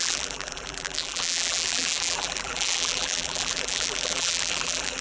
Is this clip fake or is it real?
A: fake